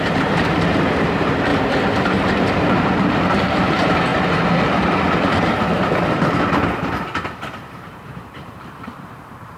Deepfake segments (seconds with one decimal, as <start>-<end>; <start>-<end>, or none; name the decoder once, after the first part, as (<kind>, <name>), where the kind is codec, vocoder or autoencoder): 0.0-1.5 (vocoder, BigVGAN v2); 2.4-4.1; 7.3-9.6